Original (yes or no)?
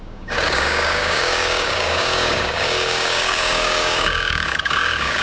no